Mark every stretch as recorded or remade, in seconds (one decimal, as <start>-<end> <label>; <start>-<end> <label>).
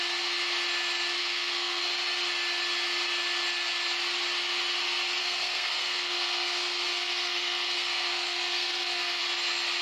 0.0-1.2 recorded; 1.2-1.8 remade; 1.8-5.2 recorded; 5.2-9.2 remade; 9.2-9.8 recorded